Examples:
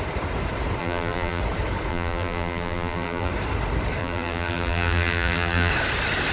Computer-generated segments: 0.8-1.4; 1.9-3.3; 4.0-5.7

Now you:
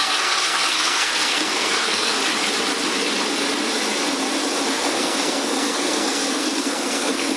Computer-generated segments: 0.0-2.2; 4.7-7.4

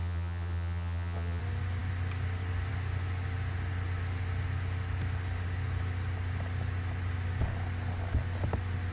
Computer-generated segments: 0.0-1.4

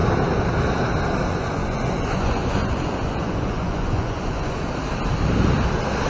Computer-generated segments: 1.3-4.7

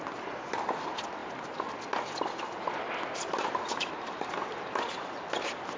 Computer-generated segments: none

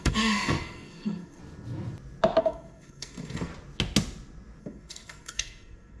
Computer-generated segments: 0.0-1.4; 2.4-3.5; 4.6-6.0

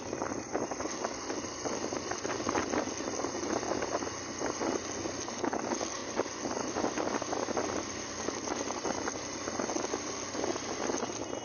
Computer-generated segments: none

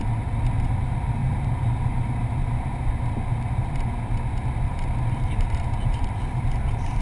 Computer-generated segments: 1.2-2.9; 4.7-6.4